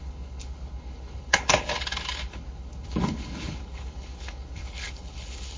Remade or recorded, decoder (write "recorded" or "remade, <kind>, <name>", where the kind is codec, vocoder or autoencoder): remade, codec, HILCodec